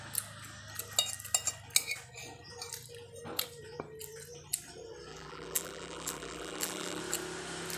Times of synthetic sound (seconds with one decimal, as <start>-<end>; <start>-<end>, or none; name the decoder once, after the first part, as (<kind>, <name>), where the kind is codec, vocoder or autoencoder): 5.1-7.0 (vocoder, BigVGAN v2)